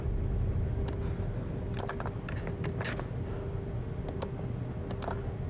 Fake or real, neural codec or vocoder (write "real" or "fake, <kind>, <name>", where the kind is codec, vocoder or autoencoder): real